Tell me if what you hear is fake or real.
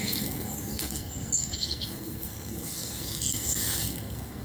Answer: fake